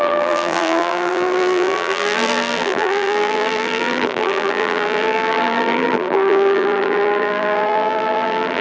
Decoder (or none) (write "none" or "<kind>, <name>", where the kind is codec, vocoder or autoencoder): vocoder, BigVGAN v2